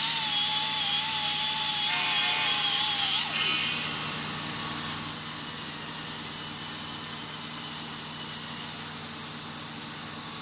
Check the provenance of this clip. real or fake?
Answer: real